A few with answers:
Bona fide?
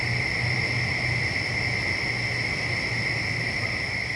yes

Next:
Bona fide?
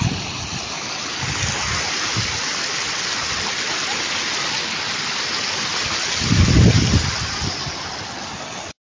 yes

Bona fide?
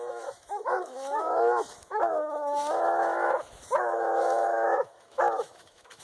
no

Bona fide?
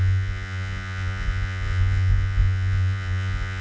no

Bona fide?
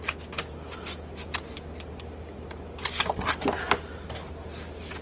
yes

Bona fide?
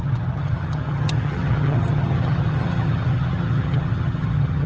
no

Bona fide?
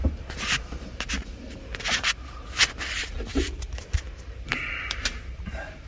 yes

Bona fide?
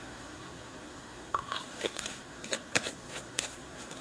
no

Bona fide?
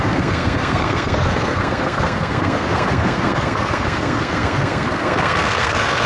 no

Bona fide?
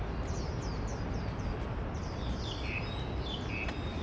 yes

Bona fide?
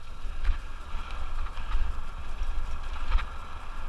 yes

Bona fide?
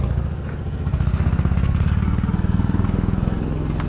no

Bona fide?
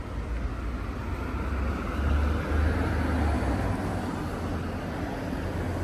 yes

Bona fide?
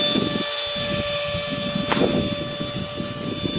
yes